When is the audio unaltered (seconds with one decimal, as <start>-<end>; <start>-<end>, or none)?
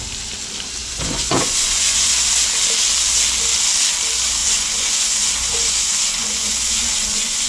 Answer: 0.0-0.8; 2.1-4.4